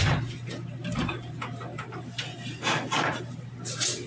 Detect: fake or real real